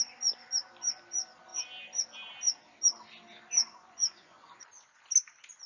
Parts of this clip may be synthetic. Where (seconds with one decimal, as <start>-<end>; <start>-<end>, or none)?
3.6-4.7